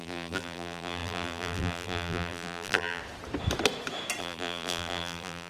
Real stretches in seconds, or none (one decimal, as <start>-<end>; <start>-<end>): 3.0-4.2